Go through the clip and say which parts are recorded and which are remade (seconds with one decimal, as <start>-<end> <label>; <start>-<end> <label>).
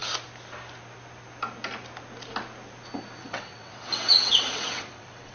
0.0-3.2 recorded; 3.2-5.3 remade